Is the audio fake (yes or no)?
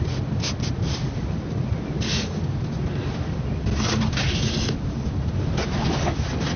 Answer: no